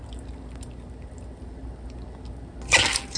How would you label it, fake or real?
real